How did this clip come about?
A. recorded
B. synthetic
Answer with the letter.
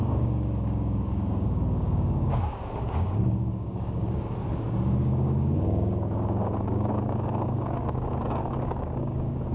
B